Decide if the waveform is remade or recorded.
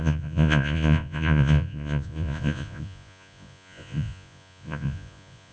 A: remade